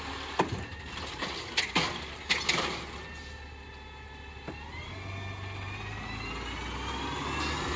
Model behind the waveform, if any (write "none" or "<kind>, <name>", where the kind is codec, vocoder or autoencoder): none